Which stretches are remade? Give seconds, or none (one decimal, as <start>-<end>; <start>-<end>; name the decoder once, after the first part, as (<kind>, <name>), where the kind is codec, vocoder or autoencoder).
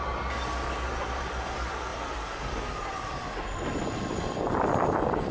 1.9-5.3 (vocoder, BigVGAN v2)